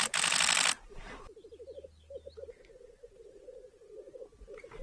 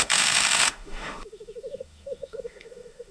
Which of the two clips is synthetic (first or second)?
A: second